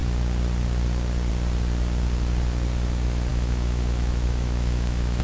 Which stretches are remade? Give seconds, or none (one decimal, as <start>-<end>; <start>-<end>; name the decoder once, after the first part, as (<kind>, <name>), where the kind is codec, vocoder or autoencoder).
3.3-5.2 (autoencoder, DAC-VAE)